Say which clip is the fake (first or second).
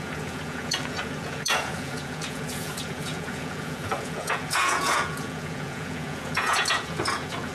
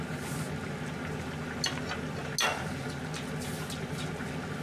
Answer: first